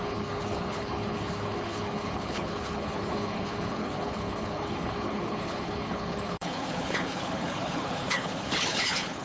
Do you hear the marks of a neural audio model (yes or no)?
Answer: yes